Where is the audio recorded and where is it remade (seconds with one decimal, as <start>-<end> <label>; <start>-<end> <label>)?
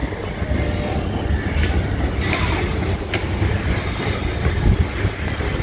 0.0-5.6 recorded